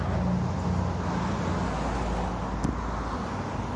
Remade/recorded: recorded